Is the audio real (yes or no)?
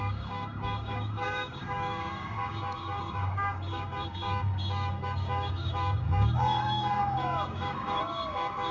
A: no